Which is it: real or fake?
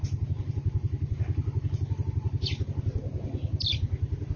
real